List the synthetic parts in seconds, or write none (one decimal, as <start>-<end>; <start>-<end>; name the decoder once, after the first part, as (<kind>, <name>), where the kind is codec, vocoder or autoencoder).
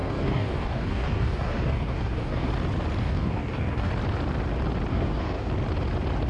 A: 0.0-2.5 (codec, DAC); 3.0-3.9; 4.9-5.5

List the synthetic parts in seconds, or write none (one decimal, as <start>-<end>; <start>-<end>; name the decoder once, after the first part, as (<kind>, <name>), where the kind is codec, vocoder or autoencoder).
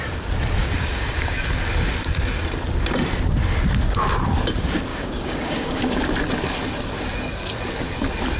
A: 0.6-1.2 (codec, DAC); 4.9-6.0